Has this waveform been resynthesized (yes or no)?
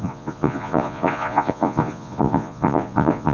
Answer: yes